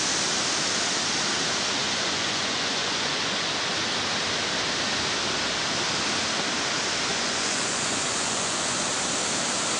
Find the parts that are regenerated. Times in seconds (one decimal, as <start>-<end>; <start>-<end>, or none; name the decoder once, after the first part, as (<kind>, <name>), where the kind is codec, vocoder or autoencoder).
1.8-3.5 (vocoder, Vocos); 7.1-8.9